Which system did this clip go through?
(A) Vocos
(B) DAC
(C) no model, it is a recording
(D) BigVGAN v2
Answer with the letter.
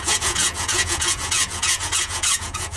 A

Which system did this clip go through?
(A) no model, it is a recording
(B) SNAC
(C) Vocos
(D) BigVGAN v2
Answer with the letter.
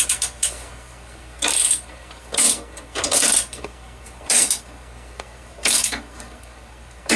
B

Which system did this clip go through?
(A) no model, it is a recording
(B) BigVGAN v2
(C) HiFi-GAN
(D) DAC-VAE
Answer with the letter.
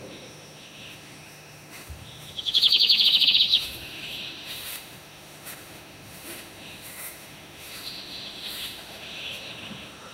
D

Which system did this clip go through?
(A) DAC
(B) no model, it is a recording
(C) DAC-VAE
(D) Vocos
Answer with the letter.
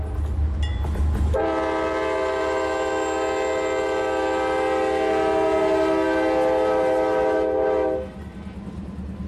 B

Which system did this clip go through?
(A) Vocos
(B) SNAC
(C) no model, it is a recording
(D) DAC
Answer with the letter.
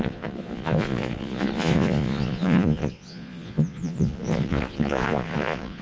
A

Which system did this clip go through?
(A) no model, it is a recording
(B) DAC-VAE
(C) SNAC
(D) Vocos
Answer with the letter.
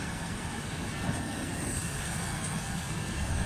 C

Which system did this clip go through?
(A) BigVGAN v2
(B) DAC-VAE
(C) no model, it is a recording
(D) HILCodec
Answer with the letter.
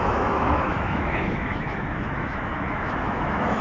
B